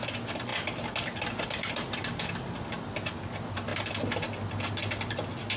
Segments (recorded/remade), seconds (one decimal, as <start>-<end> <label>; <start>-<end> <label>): 0.0-5.6 recorded